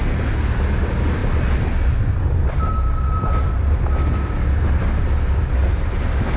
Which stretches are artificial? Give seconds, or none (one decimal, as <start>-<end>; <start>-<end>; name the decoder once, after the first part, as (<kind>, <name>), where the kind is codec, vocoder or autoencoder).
none